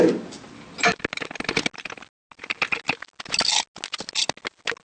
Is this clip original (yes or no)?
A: yes